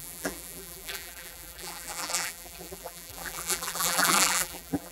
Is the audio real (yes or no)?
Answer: no